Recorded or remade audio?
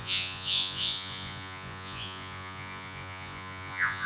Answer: remade